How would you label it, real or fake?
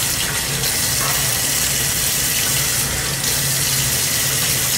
real